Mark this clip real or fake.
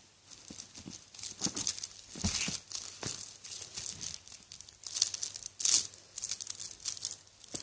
real